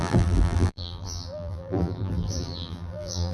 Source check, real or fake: fake